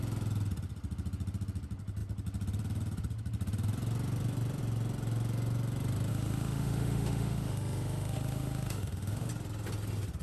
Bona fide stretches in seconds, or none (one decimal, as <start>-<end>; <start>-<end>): 0.0-6.1; 9.3-10.2